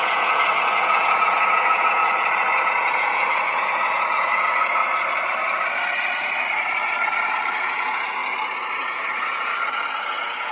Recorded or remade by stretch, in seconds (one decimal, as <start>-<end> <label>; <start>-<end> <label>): 0.0-2.0 remade; 2.0-2.6 recorded; 2.6-4.8 remade; 4.8-7.6 recorded; 7.6-8.2 remade; 8.2-8.9 recorded; 8.9-9.5 remade; 9.5-10.1 recorded; 10.1-10.5 remade